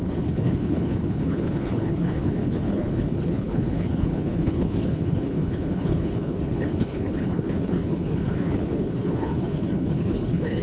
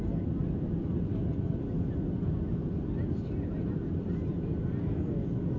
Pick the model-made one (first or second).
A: first